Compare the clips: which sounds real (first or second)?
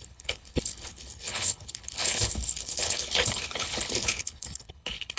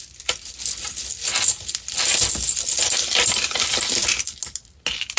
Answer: second